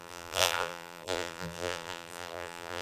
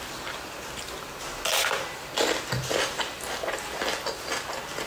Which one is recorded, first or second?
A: second